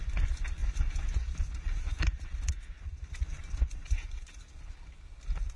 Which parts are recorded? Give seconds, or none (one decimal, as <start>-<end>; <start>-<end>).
0.0-0.6; 2.1-2.9; 3.4-3.8; 4.3-5.6